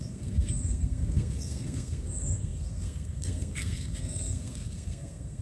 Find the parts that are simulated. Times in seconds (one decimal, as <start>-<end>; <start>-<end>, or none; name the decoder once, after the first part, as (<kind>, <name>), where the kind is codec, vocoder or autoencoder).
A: 0.0-5.4 (codec, SNAC)